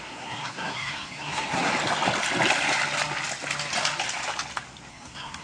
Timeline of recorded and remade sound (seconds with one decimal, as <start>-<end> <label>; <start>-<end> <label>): 0.0-1.7 remade; 1.7-4.9 recorded; 4.9-5.4 remade

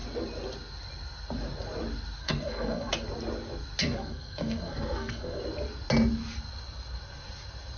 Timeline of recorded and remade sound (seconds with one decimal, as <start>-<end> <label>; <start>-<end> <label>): 0.0-2.2 recorded; 2.2-2.9 remade; 2.9-3.8 recorded; 3.8-5.4 remade; 5.4-7.8 recorded

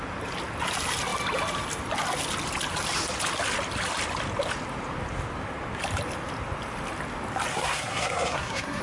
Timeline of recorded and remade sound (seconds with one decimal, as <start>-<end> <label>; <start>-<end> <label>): 0.0-7.5 recorded; 7.5-8.8 remade

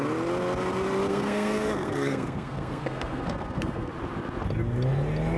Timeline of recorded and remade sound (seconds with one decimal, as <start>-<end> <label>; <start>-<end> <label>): 0.0-1.1 recorded; 1.1-3.9 remade; 3.9-5.4 recorded

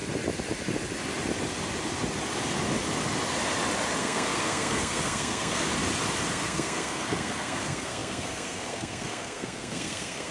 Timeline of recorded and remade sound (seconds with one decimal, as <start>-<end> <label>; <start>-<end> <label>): 0.0-4.0 recorded; 4.0-5.7 remade; 5.7-6.3 recorded; 6.3-10.3 remade

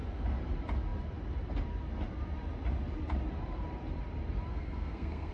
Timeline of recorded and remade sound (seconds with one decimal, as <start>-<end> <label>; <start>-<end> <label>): 0.0-4.5 recorded; 4.5-5.3 remade

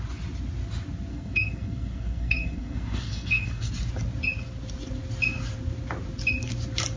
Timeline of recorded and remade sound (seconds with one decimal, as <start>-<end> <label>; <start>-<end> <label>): 0.0-1.1 recorded; 1.1-3.7 remade; 3.7-7.0 recorded